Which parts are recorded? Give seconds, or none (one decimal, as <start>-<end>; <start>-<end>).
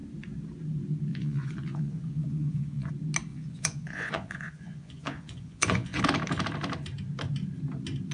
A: 0.0-1.1; 2.9-3.3; 6.0-8.1